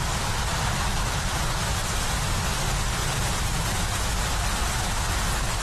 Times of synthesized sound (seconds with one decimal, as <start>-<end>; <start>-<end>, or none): 1.8-2.3; 3.0-3.6